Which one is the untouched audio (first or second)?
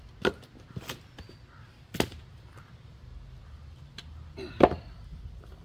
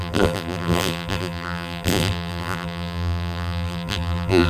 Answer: first